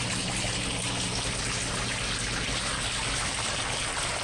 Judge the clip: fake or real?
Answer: real